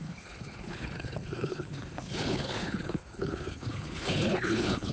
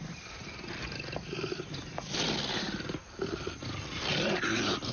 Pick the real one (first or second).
second